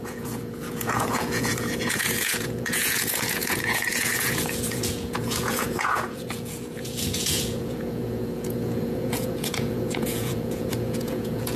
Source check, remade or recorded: remade